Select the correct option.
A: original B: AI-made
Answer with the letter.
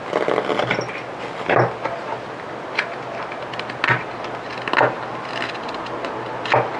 A